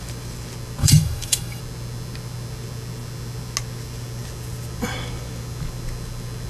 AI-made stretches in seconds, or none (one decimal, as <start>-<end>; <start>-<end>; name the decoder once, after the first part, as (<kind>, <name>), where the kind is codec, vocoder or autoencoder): 0.8-1.6 (autoencoder, DAC-VAE)

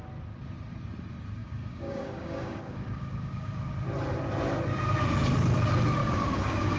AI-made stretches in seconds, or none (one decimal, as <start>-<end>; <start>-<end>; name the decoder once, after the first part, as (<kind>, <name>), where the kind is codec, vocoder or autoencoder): 1.4-3.7 (codec, DAC); 6.0-6.8

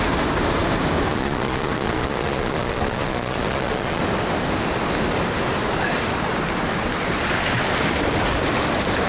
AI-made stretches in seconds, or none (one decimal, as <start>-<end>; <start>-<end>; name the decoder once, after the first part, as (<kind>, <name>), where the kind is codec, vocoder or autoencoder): 1.1-4.0 (vocoder, Vocos)

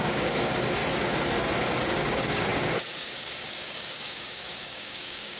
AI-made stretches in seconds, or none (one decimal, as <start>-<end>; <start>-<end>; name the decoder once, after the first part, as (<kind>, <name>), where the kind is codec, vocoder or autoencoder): 0.0-0.8 (codec, DAC); 1.9-5.4

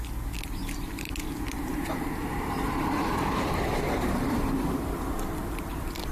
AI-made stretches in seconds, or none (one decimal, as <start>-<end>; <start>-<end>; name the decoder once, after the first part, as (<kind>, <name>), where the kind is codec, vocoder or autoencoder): 1.7-5.3 (vocoder, BigVGAN v2)

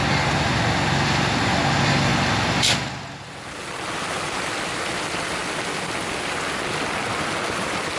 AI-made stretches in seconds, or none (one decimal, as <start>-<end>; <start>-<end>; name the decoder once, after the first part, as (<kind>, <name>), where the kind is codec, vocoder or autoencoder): none

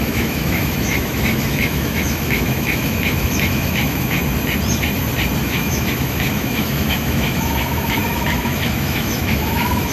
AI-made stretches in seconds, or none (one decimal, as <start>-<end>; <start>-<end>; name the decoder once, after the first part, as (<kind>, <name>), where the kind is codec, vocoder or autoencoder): 0.0-4.2 (autoencoder, DAC-VAE); 5.4-9.9